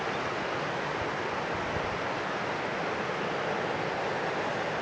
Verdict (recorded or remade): recorded